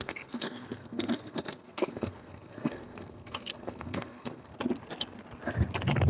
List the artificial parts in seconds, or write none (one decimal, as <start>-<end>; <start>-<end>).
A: 0.0-4.5

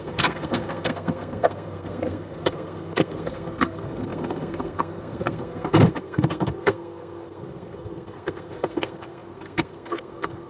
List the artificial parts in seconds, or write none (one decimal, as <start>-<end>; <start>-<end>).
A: 0.0-10.5

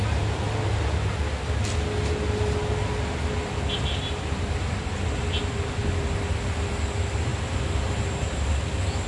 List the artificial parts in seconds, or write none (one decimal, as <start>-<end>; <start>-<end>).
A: none

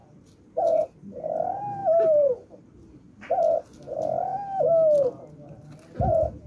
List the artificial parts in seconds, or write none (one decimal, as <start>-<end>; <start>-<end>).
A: none

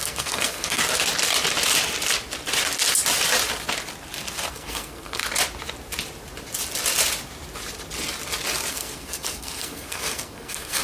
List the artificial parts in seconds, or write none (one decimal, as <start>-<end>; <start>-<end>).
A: 0.0-0.8; 4.5-5.2; 8.7-10.8